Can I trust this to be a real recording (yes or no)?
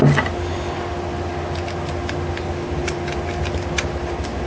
yes